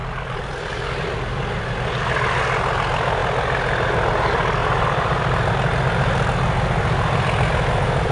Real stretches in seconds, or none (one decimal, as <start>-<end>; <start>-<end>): 0.6-4.6; 5.5-8.1